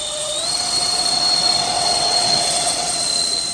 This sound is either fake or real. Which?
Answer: fake